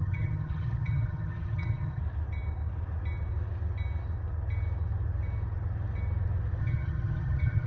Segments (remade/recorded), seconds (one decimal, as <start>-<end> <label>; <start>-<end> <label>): 0.0-2.0 remade; 2.0-6.6 recorded; 6.6-7.7 remade